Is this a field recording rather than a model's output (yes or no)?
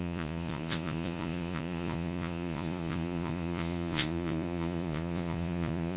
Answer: no